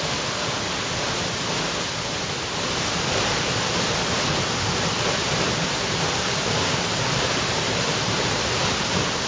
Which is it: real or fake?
fake